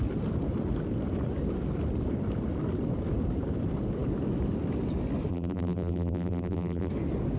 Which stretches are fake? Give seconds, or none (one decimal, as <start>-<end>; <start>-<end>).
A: 5.3-6.9